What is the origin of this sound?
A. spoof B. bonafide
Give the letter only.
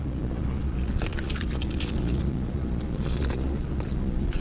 A